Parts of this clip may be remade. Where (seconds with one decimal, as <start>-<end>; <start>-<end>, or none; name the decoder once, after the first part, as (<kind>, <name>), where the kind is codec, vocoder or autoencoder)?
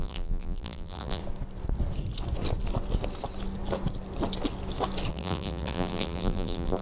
0.0-1.2 (vocoder, BigVGAN v2); 5.1-6.8